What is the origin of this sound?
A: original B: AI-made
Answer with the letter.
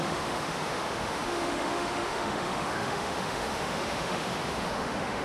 B